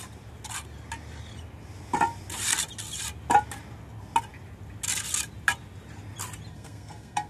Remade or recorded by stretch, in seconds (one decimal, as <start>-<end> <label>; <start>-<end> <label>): 0.0-6.5 recorded; 6.5-7.3 remade

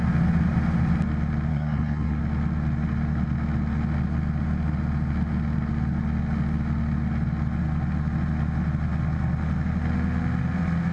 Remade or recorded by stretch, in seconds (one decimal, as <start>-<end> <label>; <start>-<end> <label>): 0.0-1.5 recorded; 1.5-2.2 remade; 2.2-10.9 recorded